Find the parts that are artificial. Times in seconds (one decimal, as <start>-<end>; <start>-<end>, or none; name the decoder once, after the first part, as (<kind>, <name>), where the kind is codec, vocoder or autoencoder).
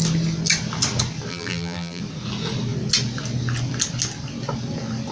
1.3-2.0 (vocoder, BigVGAN v2)